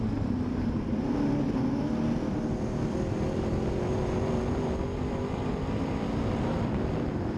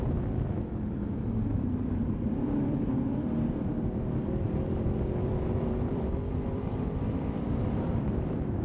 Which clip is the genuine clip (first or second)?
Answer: first